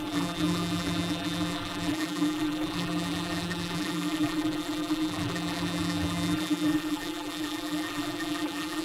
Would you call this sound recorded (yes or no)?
no